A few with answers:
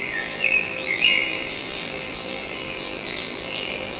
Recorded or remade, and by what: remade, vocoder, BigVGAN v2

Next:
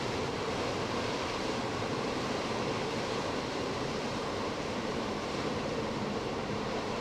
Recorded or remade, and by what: remade, vocoder, BigVGAN v2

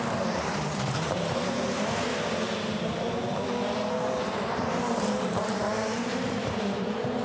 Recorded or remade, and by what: remade, vocoder, BigVGAN v2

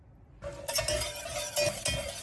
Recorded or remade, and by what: recorded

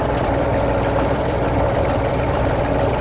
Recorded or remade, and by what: remade, vocoder, BigVGAN v2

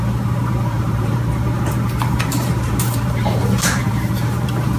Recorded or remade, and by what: remade, vocoder, BigVGAN v2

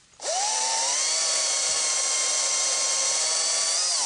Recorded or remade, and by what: remade, vocoder, BigVGAN v2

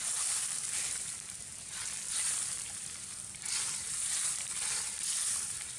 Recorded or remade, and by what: remade, vocoder, BigVGAN v2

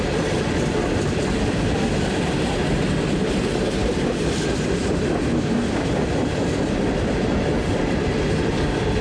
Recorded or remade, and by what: remade, vocoder, BigVGAN v2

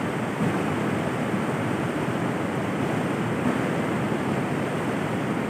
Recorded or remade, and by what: recorded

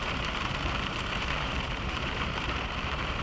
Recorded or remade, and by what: remade, vocoder, BigVGAN v2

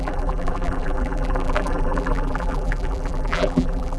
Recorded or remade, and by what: remade, vocoder, BigVGAN v2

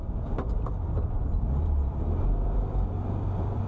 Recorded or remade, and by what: remade, vocoder, BigVGAN v2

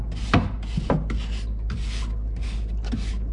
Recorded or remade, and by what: recorded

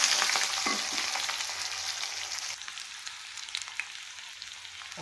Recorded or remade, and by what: recorded